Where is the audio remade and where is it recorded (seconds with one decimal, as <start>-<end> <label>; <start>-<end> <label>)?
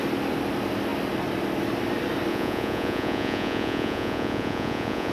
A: 0.0-2.3 recorded; 2.3-5.1 remade